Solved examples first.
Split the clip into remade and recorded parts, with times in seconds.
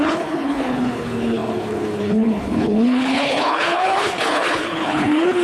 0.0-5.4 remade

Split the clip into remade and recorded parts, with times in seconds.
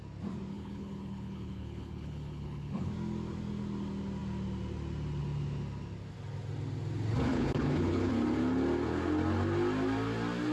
0.0-0.5 recorded; 0.5-2.9 remade; 2.9-7.3 recorded; 7.3-8.1 remade; 8.1-10.5 recorded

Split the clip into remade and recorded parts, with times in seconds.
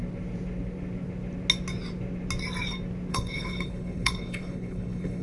0.0-3.1 recorded; 3.1-5.2 remade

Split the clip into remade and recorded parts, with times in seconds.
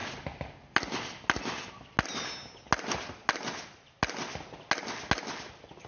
0.0-5.9 recorded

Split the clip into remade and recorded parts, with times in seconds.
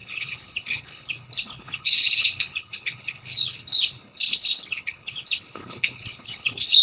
0.0-6.8 remade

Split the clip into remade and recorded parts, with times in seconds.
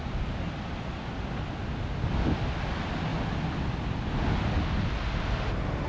0.0-5.9 recorded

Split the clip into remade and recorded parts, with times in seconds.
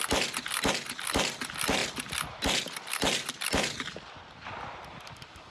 0.0-5.5 recorded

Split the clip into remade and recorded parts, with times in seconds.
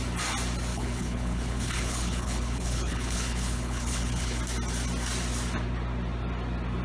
0.0-0.7 recorded; 0.7-4.4 remade; 4.4-6.8 recorded